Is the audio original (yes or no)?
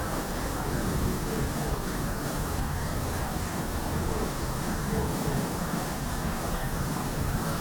no